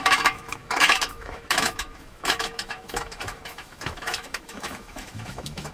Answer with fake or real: fake